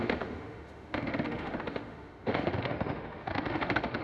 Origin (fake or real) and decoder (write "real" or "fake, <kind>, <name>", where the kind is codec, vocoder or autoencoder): fake, autoencoder, DAC-VAE